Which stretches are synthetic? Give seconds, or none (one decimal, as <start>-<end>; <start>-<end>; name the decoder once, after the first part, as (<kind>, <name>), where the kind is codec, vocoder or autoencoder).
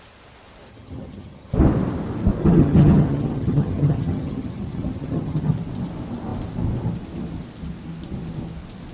0.7-1.5 (vocoder, HiFi-GAN); 2.4-5.5